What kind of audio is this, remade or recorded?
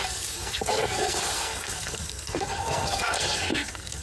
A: remade